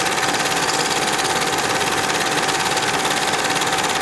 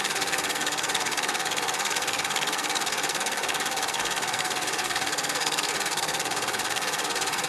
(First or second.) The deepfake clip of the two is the second